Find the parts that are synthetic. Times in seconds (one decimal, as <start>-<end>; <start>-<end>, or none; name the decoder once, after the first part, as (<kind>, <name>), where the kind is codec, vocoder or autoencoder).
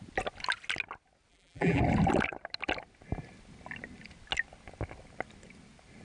1.3-1.8 (vocoder, BigVGAN v2)